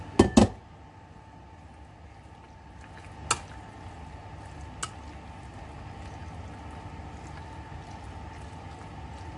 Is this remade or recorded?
recorded